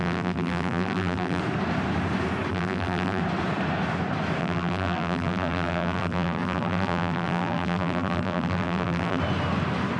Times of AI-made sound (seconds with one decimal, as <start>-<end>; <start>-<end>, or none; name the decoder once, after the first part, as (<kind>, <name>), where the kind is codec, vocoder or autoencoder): 0.0-1.4 (vocoder, BigVGAN v2); 2.5-3.2; 4.4-9.2